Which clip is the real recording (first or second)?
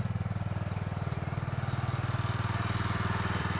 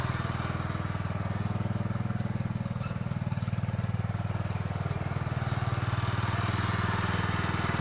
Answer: second